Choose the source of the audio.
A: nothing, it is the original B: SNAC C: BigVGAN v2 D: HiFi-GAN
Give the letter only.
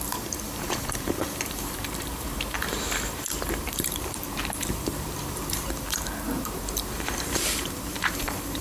C